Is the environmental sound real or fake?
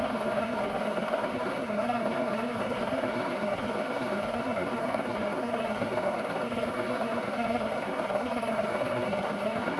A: fake